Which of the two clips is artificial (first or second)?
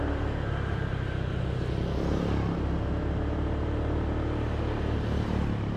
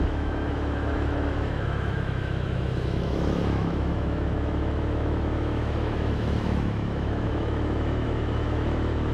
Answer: second